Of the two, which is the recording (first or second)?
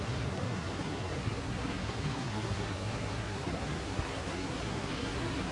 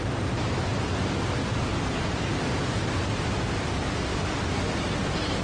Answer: second